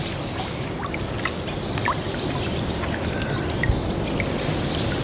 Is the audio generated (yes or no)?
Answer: no